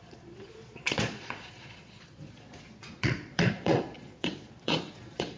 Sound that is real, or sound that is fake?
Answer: fake